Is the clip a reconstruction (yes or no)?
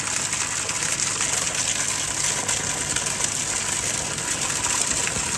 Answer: no